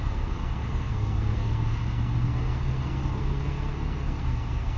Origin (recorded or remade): remade